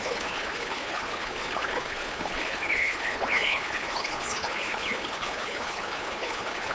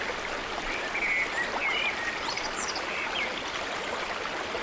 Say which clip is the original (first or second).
second